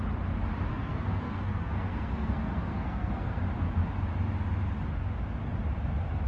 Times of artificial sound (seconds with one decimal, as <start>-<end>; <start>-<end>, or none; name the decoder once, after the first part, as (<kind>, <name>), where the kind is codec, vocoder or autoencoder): 0.7-3.4 (codec, SNAC)